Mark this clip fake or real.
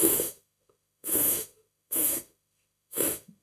fake